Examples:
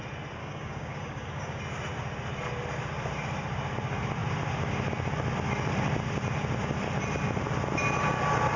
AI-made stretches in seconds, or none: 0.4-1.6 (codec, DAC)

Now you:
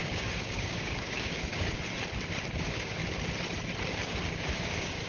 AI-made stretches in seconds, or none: 0.0-1.9 (codec, DAC); 2.5-3.0; 3.9-5.1

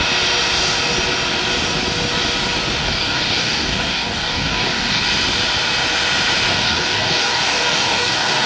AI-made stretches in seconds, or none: 2.8-5.0 (codec, DAC); 6.5-8.5

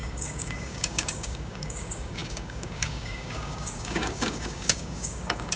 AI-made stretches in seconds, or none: 0.0-5.6 (codec, DAC)

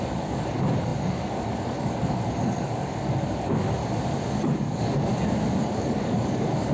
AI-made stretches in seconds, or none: 0.0-3.8 (codec, DAC); 4.4-5.1; 5.6-6.7

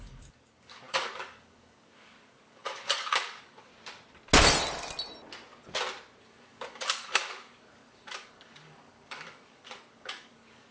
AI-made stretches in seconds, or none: 0.0-3.7 (codec, DAC); 6.2-10.7